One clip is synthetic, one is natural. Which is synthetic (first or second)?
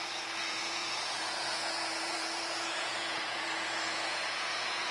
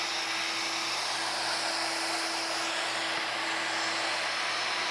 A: first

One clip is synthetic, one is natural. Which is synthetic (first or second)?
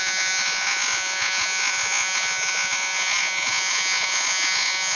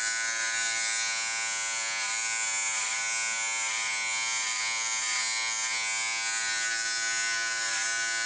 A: first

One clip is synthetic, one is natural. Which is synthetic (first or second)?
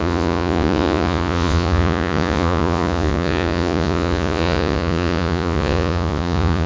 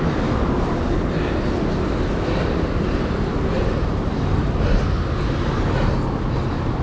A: first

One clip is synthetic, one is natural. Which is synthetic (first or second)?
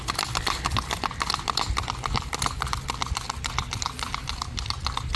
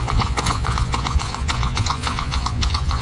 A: second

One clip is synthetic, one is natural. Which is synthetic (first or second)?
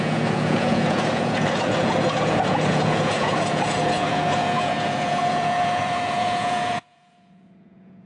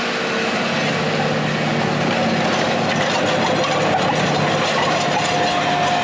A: first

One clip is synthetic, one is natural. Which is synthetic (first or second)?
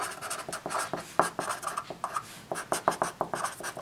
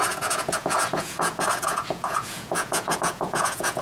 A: second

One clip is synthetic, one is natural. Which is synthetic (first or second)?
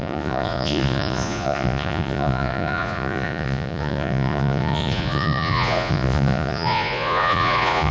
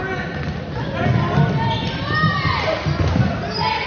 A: first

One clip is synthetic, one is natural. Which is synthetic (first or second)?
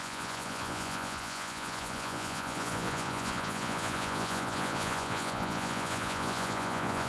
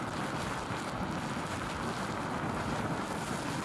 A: first